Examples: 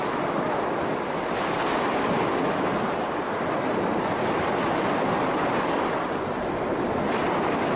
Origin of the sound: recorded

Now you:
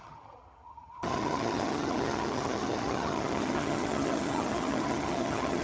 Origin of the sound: remade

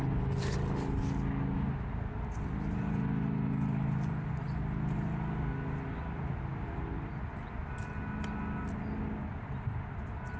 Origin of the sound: recorded